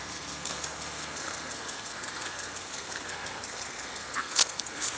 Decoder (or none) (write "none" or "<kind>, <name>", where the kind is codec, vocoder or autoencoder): codec, SNAC